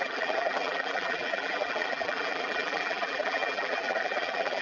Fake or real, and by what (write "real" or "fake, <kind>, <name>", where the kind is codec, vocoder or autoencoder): fake, vocoder, BigVGAN v2